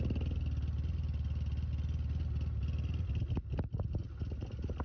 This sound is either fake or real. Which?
real